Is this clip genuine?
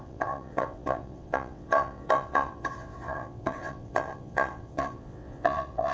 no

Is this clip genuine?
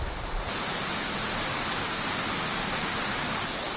yes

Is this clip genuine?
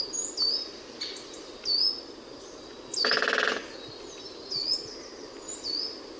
yes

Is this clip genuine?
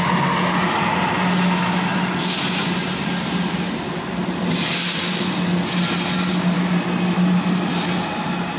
yes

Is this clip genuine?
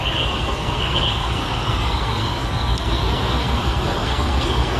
no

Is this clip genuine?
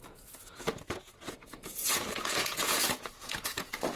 no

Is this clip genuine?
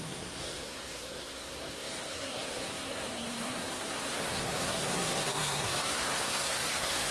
no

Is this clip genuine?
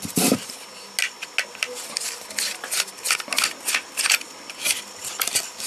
yes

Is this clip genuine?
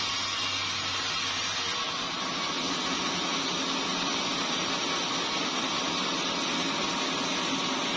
yes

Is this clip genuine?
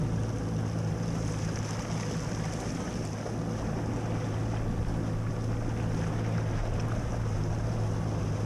yes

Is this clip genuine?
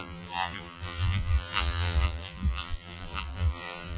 no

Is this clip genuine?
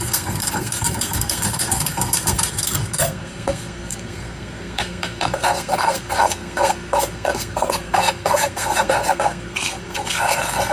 no